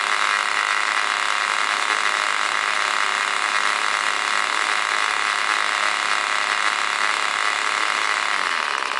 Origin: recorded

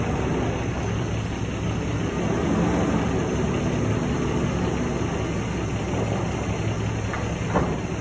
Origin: recorded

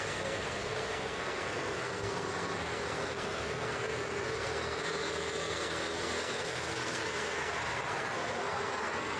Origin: remade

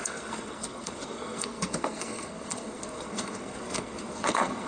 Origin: remade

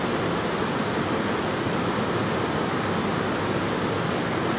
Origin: recorded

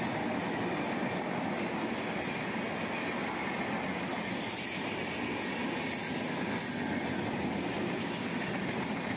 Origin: recorded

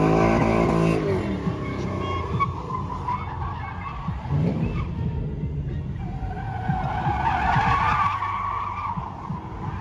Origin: recorded